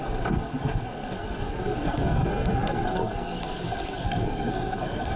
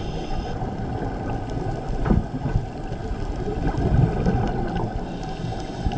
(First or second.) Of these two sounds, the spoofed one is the first